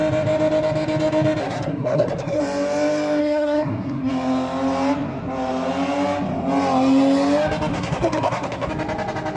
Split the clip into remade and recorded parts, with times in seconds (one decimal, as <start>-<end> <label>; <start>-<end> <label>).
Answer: 0.0-1.4 recorded; 1.4-2.4 remade; 2.4-3.2 recorded; 3.2-4.1 remade; 4.1-7.7 recorded; 7.7-8.7 remade; 8.7-9.4 recorded